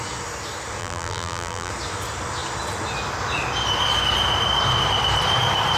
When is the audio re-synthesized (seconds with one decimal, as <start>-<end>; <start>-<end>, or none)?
0.8-1.7